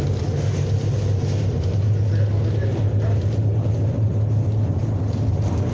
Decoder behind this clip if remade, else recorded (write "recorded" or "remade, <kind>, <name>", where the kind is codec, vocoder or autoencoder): recorded